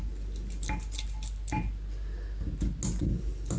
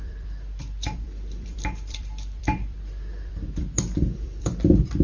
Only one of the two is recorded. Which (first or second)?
first